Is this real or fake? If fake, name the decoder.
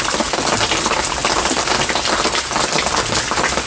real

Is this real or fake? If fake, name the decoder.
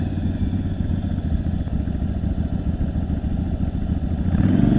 fake, vocoder, Vocos